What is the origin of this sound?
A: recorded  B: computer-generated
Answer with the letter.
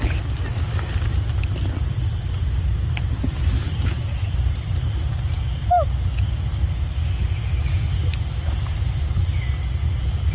A